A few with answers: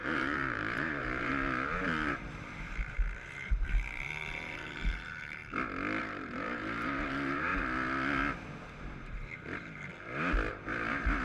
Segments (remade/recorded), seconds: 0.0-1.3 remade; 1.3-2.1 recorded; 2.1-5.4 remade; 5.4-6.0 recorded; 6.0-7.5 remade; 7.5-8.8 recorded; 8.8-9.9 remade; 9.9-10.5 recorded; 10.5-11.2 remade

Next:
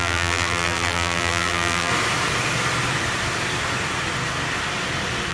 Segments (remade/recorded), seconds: 0.0-1.9 remade; 1.9-5.3 recorded

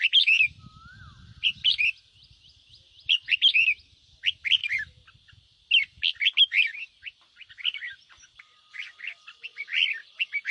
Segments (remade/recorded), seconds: 0.0-1.3 recorded; 1.3-3.5 remade; 3.5-4.6 recorded; 4.6-5.5 remade; 5.5-9.5 recorded; 9.5-10.5 remade

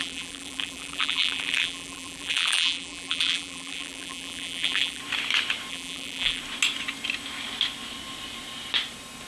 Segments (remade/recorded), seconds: 0.0-5.0 remade; 5.0-5.7 recorded; 5.7-6.4 remade; 6.4-9.3 recorded

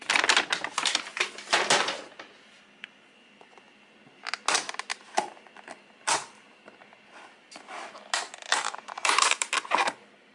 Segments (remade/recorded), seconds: 0.0-4.9 recorded; 4.9-5.5 remade; 5.5-8.5 recorded; 8.5-9.5 remade; 9.5-10.3 recorded

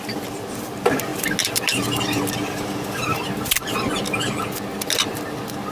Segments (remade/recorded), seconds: 0.0-5.7 recorded

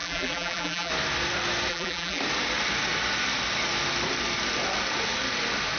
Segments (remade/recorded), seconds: 0.0-0.9 remade; 0.9-1.7 recorded; 1.7-2.2 remade; 2.2-5.8 recorded